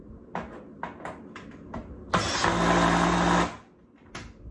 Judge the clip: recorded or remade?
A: recorded